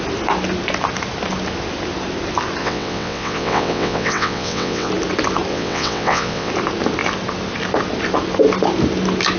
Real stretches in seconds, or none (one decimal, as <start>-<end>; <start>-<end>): 0.0-2.6; 4.9-5.5; 6.5-9.4